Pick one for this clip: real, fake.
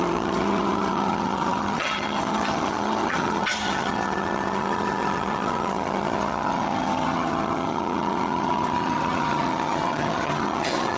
fake